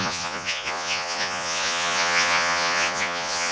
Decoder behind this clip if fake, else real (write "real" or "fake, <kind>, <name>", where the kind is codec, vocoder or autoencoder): fake, vocoder, Vocos